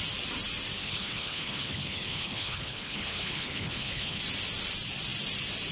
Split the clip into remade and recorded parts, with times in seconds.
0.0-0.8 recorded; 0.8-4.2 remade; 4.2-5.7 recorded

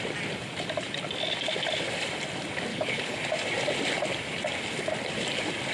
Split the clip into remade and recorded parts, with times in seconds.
0.0-2.7 recorded; 2.7-3.2 remade; 3.2-5.7 recorded

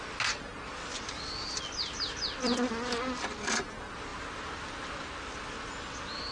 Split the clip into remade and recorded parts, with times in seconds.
0.0-6.3 recorded

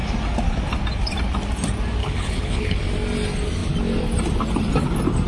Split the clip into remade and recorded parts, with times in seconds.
0.0-2.0 recorded; 2.0-2.8 remade; 2.8-5.3 recorded

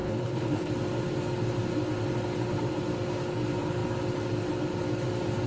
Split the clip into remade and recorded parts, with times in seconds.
0.0-0.7 remade; 0.7-5.5 recorded

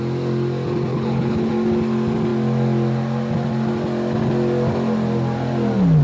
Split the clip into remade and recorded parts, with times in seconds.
0.0-0.9 recorded; 0.9-1.5 remade; 1.5-6.0 recorded

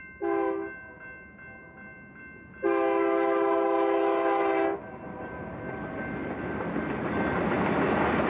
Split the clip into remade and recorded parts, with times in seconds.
0.0-8.3 recorded

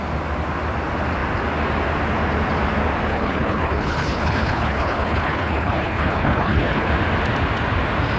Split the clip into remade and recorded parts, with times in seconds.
0.0-3.1 recorded; 3.1-6.9 remade; 6.9-8.2 recorded